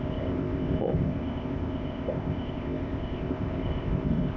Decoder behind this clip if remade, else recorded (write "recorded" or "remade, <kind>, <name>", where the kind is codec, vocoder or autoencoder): remade, codec, ZipCodec